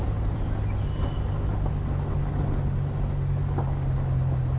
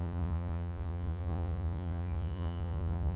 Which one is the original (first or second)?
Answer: first